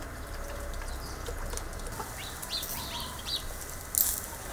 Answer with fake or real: real